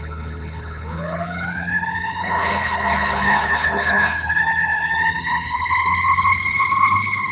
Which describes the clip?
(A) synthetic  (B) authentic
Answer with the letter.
A